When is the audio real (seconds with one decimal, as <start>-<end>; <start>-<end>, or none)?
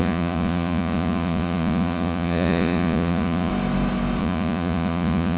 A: 3.5-4.2